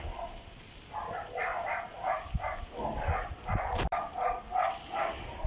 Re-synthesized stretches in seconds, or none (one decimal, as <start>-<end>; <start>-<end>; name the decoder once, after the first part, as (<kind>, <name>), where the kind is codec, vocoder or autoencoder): none